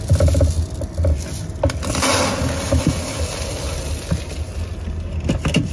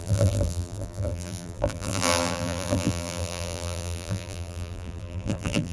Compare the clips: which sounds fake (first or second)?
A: second